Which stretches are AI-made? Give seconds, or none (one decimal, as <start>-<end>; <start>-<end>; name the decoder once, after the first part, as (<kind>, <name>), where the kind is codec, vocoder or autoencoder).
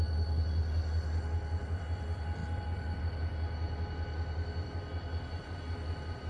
none